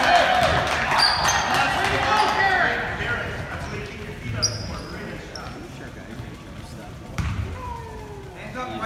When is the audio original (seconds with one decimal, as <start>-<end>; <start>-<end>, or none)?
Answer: 0.0-3.2; 4.1-6.8; 7.5-8.9

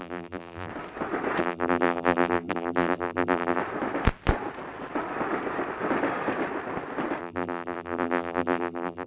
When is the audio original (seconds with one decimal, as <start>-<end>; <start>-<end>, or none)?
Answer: 0.7-1.4; 3.6-7.2

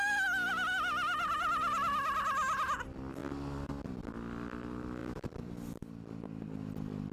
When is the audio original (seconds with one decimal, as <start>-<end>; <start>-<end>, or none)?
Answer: 0.0-5.0; 6.4-7.1

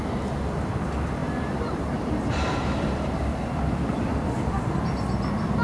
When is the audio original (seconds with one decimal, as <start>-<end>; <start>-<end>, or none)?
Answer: 0.0-1.2; 4.6-5.6

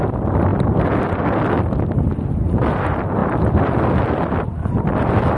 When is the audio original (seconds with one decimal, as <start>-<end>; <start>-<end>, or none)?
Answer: 0.0-0.5; 2.1-3.2; 3.9-5.4

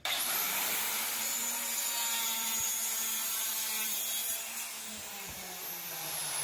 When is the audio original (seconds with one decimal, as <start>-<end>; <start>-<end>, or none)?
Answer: 4.2-5.2

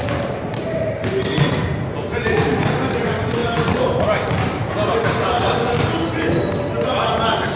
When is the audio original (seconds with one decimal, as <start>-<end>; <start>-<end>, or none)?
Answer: 0.0-3.4; 4.7-7.6

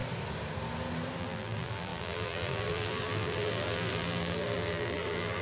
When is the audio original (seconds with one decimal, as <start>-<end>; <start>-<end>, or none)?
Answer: 0.0-1.2